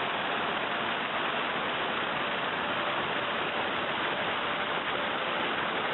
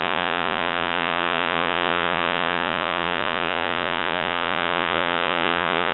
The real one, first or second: first